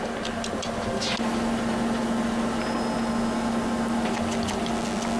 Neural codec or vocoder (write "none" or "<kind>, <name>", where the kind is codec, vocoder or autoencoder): none